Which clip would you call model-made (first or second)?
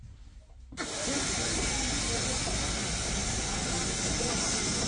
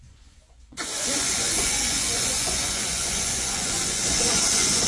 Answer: second